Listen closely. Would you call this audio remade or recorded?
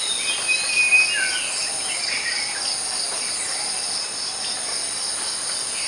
recorded